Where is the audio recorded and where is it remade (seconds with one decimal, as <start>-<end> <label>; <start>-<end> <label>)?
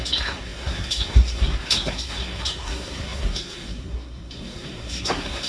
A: 0.0-5.5 remade